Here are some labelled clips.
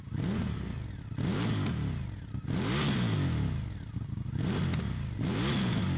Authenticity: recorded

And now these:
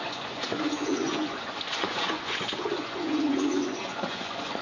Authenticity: remade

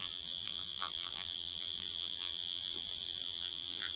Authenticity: remade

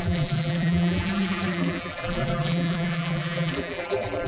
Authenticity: remade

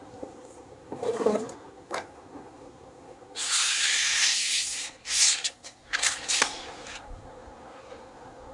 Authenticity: remade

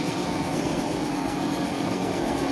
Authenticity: remade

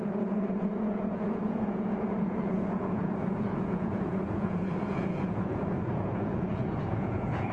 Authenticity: remade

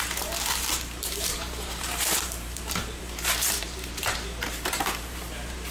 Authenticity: remade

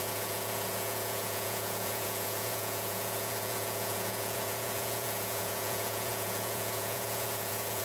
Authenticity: remade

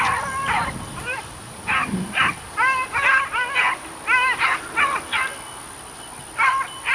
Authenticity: recorded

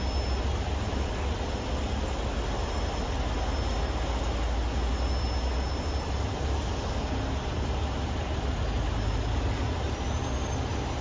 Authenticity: recorded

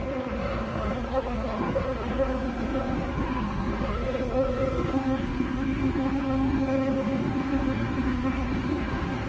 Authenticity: remade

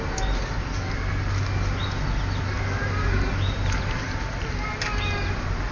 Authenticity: recorded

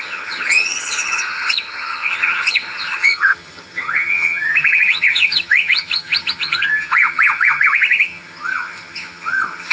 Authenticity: remade